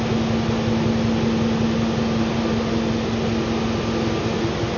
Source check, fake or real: real